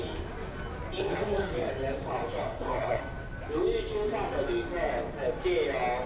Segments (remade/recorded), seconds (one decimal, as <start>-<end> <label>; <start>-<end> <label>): 0.0-1.0 recorded; 1.0-1.7 remade; 1.7-2.4 recorded; 2.4-3.0 remade; 3.0-6.1 recorded